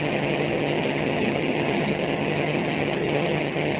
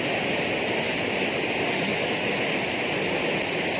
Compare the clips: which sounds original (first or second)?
second